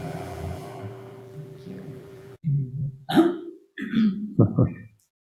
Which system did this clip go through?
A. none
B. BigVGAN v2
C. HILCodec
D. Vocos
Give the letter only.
B